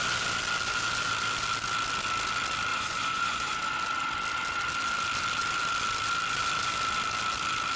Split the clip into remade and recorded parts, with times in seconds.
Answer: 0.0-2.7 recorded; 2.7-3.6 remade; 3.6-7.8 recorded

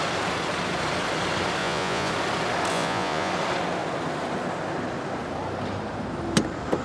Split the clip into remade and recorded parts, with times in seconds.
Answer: 0.0-1.6 recorded; 1.6-2.1 remade; 2.1-2.7 recorded; 2.7-3.3 remade; 3.3-6.8 recorded

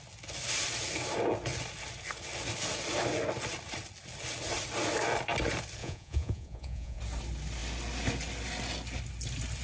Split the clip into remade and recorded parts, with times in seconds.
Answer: 0.0-5.8 recorded; 5.8-7.0 remade; 7.0-9.6 recorded

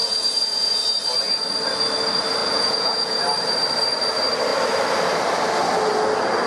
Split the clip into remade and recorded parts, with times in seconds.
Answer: 0.0-0.8 remade; 0.8-2.4 recorded; 2.4-3.2 remade; 3.2-6.5 recorded

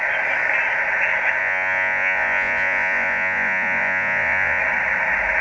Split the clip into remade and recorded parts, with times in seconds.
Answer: 0.0-1.4 recorded; 1.4-4.6 remade; 4.6-5.4 recorded

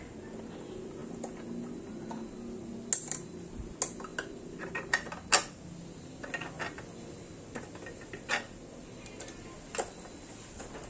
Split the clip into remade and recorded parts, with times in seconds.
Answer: 0.0-10.9 recorded

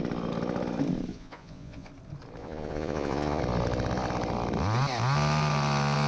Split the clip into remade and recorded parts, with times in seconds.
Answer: 0.0-1.1 recorded; 1.1-1.9 remade; 1.9-2.4 recorded; 2.4-3.4 remade; 3.4-6.1 recorded

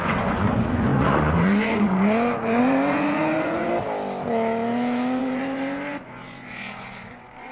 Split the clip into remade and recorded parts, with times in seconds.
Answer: 0.0-3.7 remade; 3.7-5.2 recorded; 5.2-7.5 remade